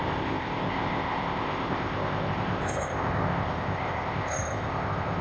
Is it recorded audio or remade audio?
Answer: remade